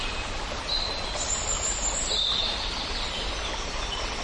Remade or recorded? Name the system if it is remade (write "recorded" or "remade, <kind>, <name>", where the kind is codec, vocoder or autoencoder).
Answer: recorded